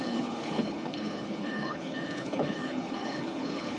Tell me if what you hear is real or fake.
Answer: fake